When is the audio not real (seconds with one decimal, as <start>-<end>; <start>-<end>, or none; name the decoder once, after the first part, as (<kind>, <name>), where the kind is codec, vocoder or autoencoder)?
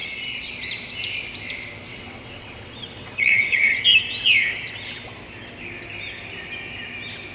0.0-0.5 (vocoder, WaveNeXt); 1.9-3.8